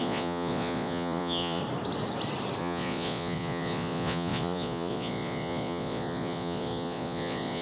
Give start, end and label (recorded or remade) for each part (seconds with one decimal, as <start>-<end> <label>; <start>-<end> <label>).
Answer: 0.0-1.6 remade; 1.6-2.6 recorded; 2.6-7.6 remade